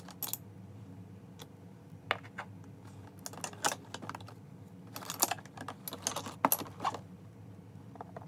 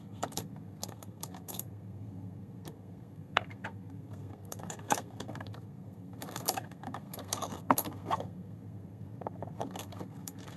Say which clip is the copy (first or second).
second